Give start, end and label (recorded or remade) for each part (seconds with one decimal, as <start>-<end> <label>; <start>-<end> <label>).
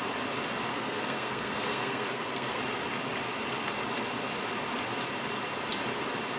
0.0-0.7 recorded; 0.7-2.6 remade; 2.6-6.4 recorded